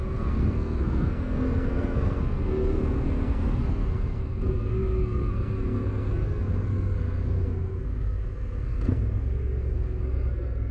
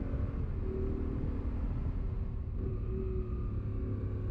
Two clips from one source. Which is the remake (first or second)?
first